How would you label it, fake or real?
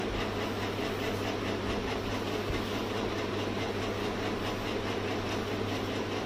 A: real